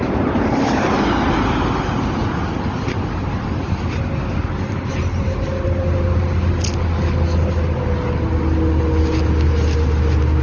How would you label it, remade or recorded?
recorded